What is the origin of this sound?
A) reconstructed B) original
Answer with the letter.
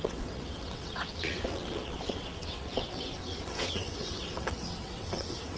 A